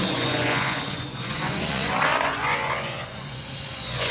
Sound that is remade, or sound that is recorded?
remade